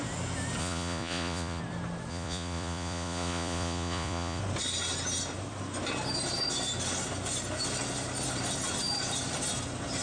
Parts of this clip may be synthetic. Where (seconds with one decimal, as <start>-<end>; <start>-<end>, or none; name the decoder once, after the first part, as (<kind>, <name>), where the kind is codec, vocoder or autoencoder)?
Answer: 0.6-1.6 (vocoder, Vocos); 2.1-4.4